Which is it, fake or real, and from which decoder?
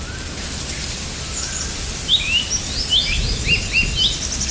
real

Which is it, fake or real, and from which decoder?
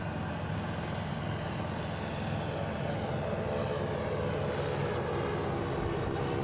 real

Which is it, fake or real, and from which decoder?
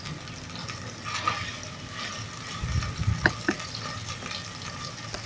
real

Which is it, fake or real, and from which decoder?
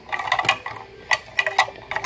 real